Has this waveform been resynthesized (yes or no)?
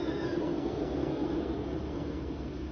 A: yes